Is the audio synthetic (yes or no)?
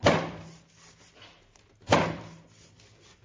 no